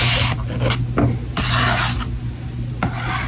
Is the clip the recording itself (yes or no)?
yes